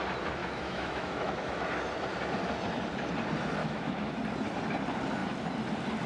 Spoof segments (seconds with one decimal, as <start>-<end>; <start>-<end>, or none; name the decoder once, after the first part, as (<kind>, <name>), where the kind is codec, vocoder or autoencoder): 0.4-1.7 (autoencoder, DAC-VAE); 3.6-4.2